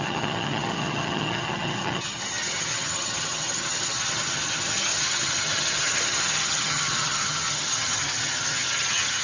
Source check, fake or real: fake